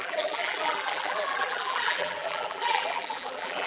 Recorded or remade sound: remade